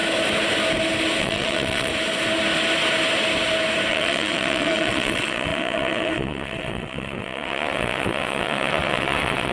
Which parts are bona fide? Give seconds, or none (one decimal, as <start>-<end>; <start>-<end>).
0.0-1.2; 1.9-3.9